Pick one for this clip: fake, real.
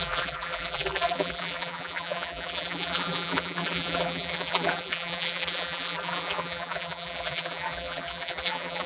fake